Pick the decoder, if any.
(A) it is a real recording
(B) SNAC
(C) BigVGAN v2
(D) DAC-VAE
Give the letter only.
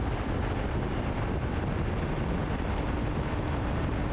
A